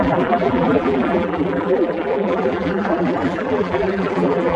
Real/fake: fake